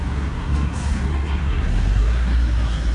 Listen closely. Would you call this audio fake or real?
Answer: fake